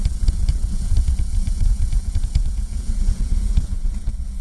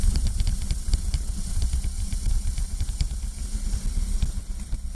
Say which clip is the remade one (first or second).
first